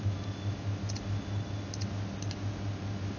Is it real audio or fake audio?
real